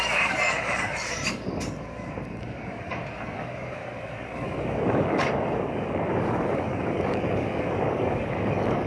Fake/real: fake